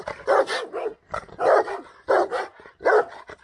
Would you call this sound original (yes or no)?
yes